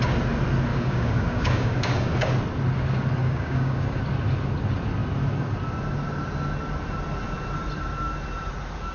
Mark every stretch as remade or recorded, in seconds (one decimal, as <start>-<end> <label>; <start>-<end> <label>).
0.0-0.7 recorded; 0.7-2.3 remade; 2.3-3.2 recorded; 3.2-4.0 remade; 4.0-8.9 recorded